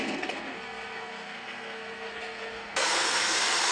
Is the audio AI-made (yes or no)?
yes